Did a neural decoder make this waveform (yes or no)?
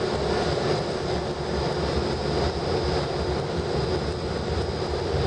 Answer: no